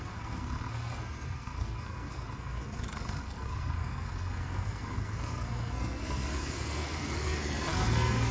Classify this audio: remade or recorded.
remade